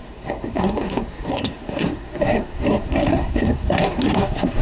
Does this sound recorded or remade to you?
remade